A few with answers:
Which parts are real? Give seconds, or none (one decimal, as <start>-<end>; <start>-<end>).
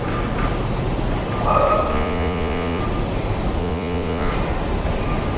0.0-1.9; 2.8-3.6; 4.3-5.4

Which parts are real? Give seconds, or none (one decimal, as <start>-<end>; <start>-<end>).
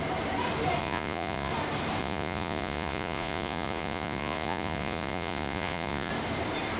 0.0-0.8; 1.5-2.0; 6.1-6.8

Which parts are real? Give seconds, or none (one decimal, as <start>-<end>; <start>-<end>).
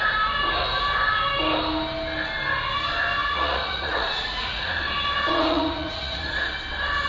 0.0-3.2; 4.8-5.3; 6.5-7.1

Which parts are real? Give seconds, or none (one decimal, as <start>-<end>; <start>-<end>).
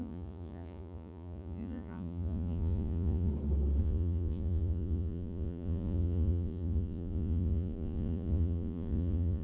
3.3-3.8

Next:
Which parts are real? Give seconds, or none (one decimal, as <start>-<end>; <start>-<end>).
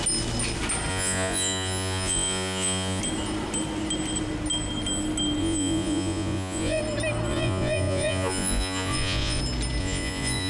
0.0-0.9; 3.0-5.4; 6.8-7.3; 9.4-9.8